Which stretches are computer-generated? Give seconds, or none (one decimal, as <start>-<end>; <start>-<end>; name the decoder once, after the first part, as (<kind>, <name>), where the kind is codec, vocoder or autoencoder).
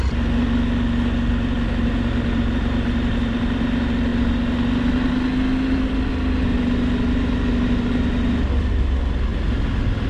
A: none